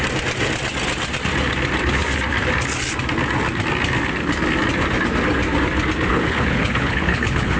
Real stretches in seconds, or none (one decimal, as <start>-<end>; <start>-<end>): 0.0-6.1